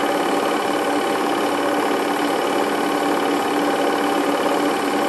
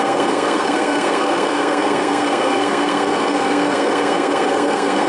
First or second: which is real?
first